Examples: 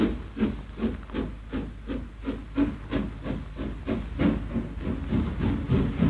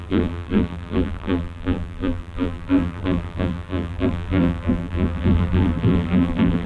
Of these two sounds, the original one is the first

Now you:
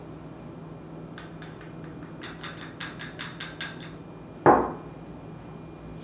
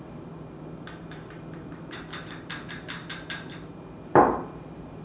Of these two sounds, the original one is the first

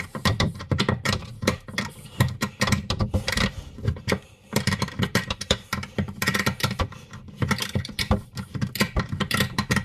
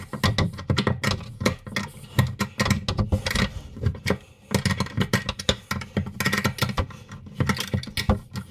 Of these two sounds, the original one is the second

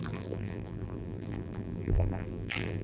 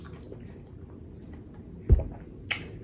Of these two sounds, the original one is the second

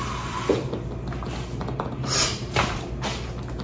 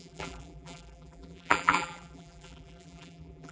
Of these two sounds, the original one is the first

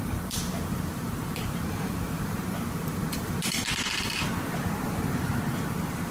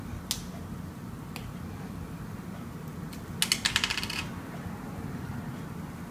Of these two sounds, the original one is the second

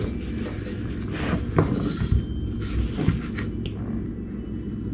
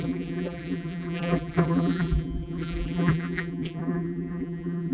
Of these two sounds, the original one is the first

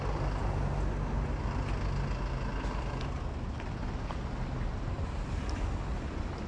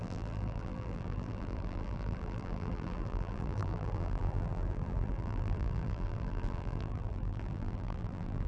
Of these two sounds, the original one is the first